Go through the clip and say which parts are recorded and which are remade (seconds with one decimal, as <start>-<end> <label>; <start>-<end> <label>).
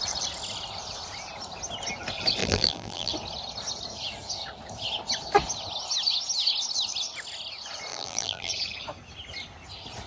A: 0.0-2.4 recorded; 2.4-3.1 remade; 3.1-7.9 recorded; 7.9-8.5 remade; 8.5-10.1 recorded